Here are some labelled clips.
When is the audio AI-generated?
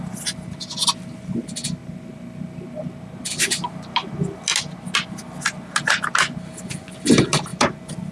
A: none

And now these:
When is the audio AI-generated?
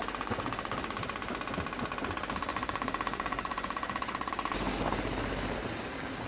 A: 2.5-4.3 (vocoder, Vocos)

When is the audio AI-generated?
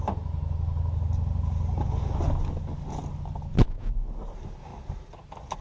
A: none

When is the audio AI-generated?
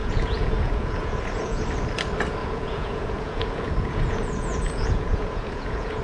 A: 0.0-1.6 (vocoder, Vocos); 2.4-6.0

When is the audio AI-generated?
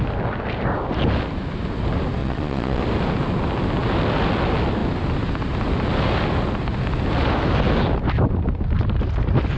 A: 2.2-2.8 (vocoder, Vocos)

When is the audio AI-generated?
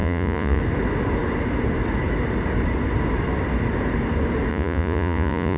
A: 0.0-0.6 (vocoder, Vocos); 4.5-5.6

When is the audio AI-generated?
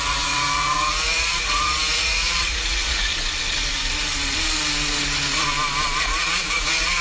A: 0.0-3.1 (vocoder, Vocos); 6.0-7.0